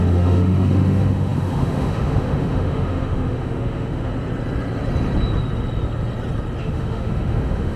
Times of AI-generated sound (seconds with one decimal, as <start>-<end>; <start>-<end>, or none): 0.0-4.1; 6.6-7.8